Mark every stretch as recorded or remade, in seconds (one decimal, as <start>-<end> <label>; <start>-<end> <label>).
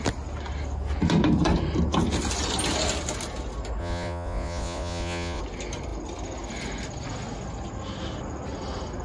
0.0-3.8 recorded; 3.8-5.4 remade; 5.4-9.0 recorded